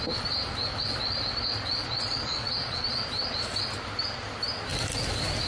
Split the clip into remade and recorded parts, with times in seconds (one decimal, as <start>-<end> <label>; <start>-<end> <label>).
0.0-1.8 recorded; 1.8-3.0 remade; 3.0-5.5 recorded